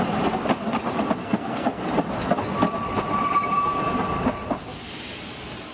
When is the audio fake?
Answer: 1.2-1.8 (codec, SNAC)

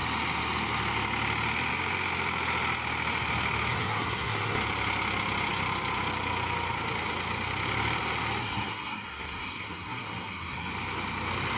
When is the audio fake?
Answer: 3.7-4.6 (codec, SNAC); 8.4-10.7

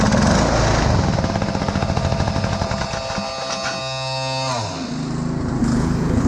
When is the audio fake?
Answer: 5.6-6.3 (codec, HILCodec)

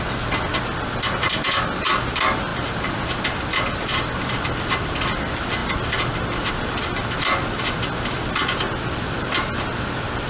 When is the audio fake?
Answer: 5.6-6.5 (vocoder, BigVGAN v2)

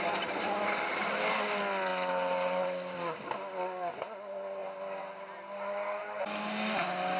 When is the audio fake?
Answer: none

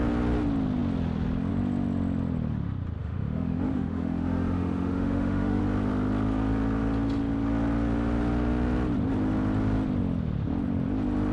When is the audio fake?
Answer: 3.0-5.6 (autoencoder, DAC-VAE)

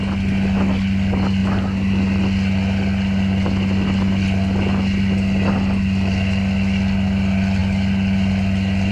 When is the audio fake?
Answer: none